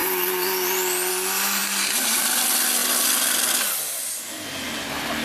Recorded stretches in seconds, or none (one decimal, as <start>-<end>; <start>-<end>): 0.0-1.6; 2.4-5.2